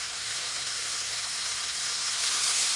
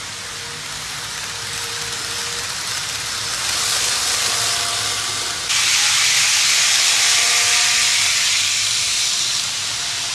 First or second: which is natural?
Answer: second